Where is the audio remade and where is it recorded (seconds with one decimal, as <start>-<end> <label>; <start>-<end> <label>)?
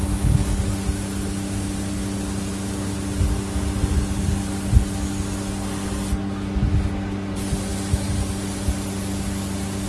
0.0-9.9 recorded